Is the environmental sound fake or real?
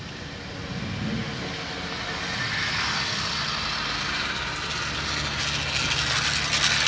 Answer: real